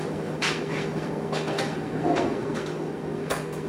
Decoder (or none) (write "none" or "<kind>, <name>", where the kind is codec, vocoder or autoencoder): codec, SNAC